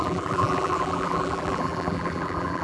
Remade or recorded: remade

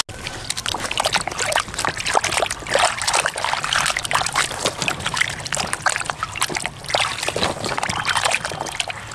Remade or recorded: recorded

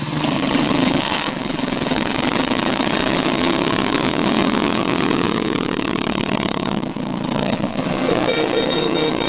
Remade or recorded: remade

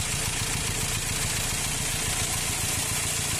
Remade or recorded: recorded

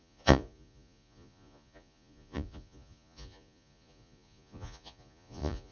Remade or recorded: remade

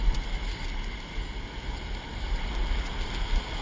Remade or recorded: recorded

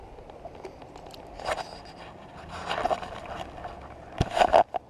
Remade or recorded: recorded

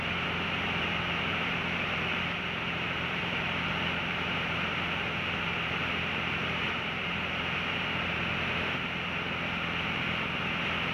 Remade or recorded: remade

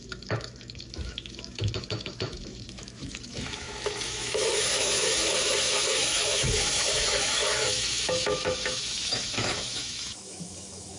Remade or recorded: remade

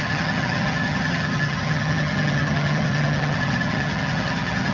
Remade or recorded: remade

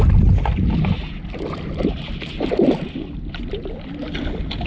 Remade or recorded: recorded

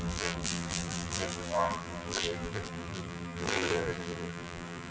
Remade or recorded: remade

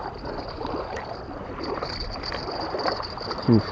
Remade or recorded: recorded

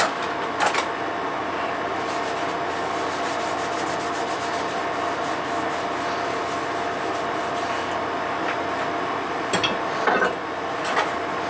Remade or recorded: recorded